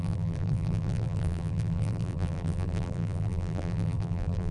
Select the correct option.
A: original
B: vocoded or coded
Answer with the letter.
B